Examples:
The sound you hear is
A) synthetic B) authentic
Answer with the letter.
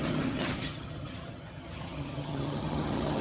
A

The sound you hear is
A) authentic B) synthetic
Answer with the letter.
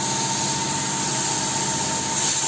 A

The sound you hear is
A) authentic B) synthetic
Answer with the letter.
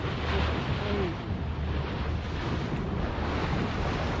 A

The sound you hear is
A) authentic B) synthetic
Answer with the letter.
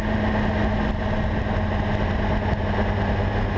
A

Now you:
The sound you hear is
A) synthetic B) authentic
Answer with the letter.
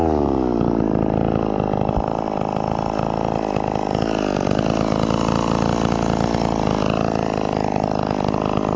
B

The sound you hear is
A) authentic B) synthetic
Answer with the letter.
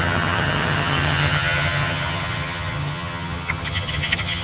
B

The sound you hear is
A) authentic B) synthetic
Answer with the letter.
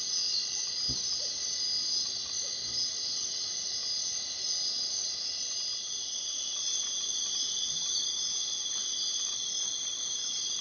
A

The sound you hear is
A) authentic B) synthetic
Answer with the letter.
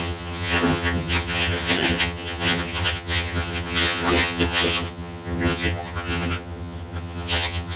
B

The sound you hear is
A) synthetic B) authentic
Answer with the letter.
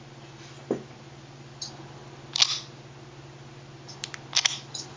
B